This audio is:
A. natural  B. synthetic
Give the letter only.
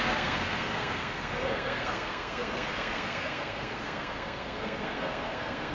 B